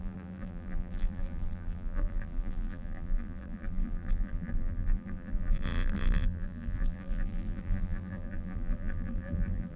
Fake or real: fake